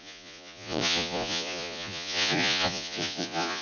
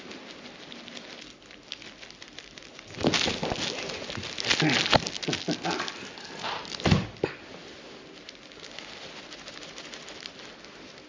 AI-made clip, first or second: first